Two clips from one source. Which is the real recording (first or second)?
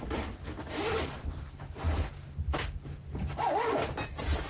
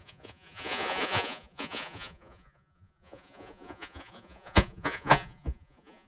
first